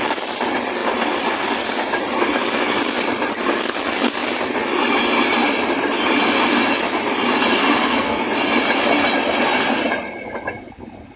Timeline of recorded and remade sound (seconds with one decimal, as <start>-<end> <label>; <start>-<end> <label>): 0.0-7.6 recorded; 7.6-8.2 remade; 8.2-11.2 recorded